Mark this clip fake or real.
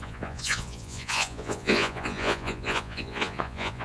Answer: fake